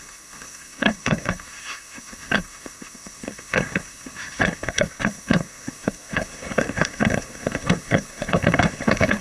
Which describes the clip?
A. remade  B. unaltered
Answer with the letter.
A